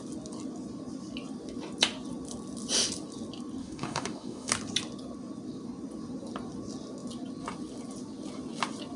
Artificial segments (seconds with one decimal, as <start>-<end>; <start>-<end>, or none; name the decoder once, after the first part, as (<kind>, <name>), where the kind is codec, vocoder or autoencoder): 3.6-4.5 (autoencoder, DAC-VAE)